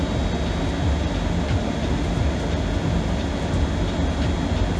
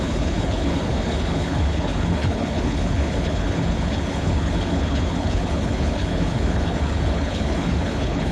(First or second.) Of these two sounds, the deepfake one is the second